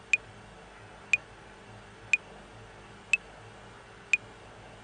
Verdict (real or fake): real